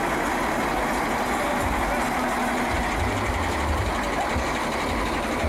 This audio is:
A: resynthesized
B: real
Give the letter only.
B